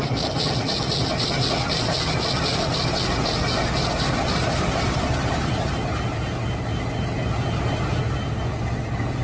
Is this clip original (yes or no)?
yes